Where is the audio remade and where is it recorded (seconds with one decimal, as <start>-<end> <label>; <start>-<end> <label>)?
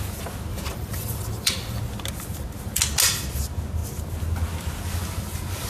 0.0-0.5 recorded; 0.5-1.8 remade; 1.8-5.7 recorded